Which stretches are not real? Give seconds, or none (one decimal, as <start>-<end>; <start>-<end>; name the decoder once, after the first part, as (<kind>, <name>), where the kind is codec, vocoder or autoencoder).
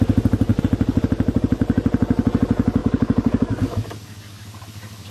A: 2.8-5.1 (codec, DAC)